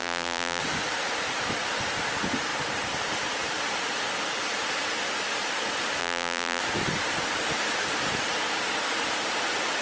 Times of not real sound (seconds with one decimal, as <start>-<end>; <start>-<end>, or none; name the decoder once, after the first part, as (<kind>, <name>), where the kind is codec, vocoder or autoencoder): 0.0-0.6 (vocoder, BigVGAN v2); 6.0-6.6